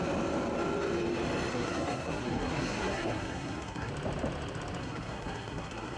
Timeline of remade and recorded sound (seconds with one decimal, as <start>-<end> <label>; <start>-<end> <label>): 0.0-1.5 recorded; 1.5-3.9 remade; 3.9-4.8 recorded; 4.8-6.0 remade